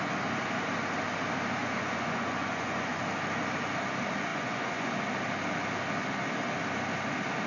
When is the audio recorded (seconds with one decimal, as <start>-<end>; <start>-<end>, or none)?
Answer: 0.0-1.6; 3.0-4.3; 4.9-7.5

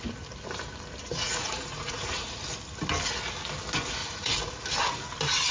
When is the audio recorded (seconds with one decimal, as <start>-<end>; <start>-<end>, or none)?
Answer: 0.0-1.0; 2.4-4.0; 4.5-5.5

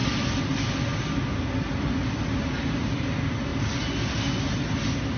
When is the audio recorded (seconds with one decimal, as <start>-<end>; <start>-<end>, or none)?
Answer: 0.0-5.2

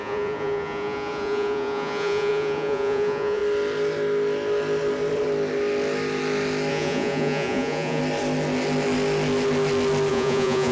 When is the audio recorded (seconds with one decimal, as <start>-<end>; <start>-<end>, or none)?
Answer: 3.4-6.7; 8.0-10.1

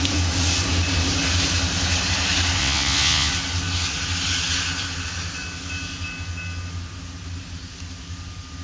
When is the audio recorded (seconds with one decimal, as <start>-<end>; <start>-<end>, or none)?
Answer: 0.0-2.6; 3.3-8.6

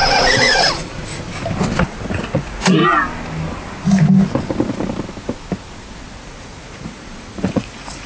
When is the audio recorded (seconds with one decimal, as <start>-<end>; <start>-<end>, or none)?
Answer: 1.1-1.8; 2.8-6.3

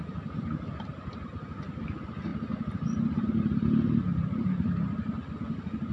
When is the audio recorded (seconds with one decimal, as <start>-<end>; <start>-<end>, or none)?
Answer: 0.0-5.9